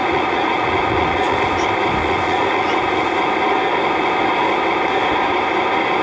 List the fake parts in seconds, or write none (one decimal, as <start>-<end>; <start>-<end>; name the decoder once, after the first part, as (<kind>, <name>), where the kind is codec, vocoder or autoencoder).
0.0-1.4 (vocoder, Vocos); 2.0-3.1